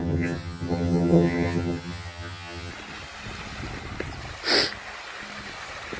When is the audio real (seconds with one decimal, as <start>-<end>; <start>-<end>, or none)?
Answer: 2.7-6.0